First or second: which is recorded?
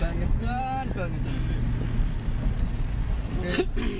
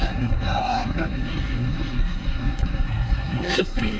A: first